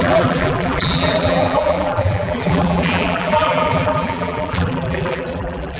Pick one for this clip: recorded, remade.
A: remade